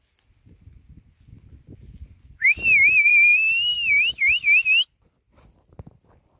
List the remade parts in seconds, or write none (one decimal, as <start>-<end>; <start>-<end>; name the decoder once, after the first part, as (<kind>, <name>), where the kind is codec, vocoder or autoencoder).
none